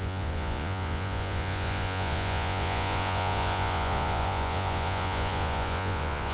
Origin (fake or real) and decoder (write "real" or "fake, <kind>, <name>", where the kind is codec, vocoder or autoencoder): fake, vocoder, Vocos